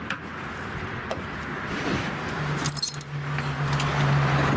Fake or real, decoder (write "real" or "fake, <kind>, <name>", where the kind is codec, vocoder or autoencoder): real